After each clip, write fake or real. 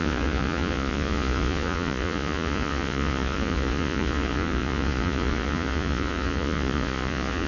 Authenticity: fake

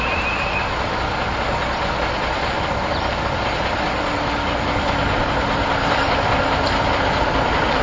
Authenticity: real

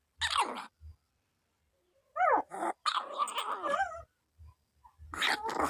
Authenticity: real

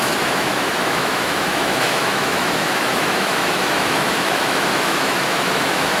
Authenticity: fake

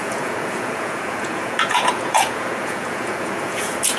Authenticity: fake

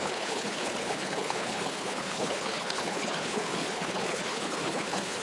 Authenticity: fake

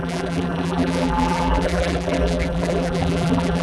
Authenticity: fake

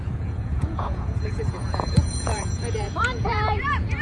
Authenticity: fake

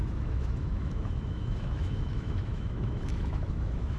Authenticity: fake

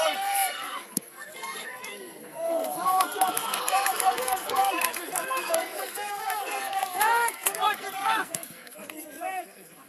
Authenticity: fake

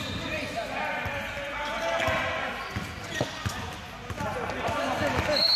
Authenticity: real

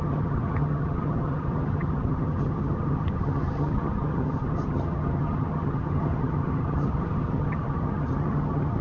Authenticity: fake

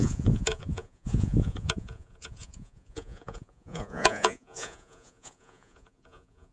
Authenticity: fake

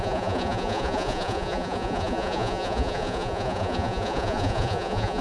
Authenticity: fake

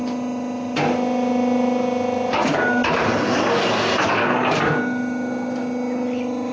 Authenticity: real